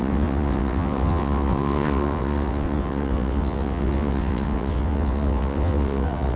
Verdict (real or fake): fake